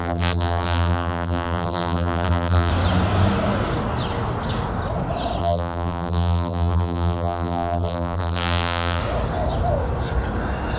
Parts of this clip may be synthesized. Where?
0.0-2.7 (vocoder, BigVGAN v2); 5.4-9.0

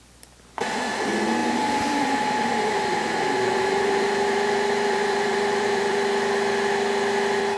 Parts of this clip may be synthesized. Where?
1.4-6.0 (vocoder, BigVGAN v2)